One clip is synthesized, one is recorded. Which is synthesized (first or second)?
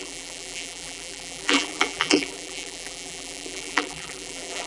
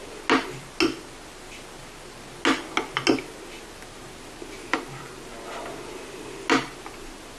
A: first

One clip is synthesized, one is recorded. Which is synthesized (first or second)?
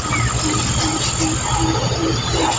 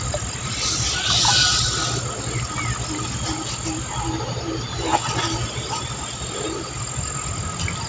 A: first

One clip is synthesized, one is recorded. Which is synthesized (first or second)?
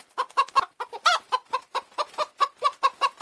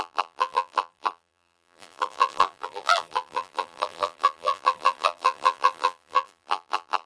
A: second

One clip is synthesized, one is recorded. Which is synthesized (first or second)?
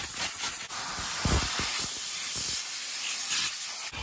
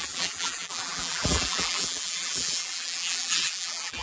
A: second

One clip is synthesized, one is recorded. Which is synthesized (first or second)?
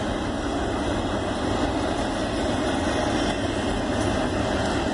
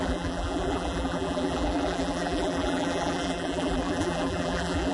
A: second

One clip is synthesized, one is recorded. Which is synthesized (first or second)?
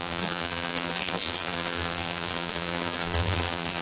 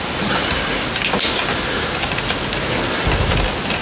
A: first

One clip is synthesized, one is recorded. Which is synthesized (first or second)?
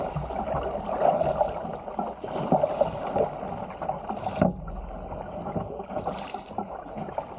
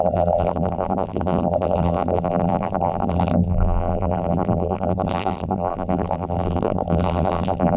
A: second